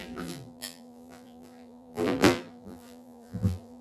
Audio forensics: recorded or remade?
remade